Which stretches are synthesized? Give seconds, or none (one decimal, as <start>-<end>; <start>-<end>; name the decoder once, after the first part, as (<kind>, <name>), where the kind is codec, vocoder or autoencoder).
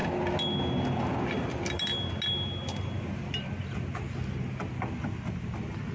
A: none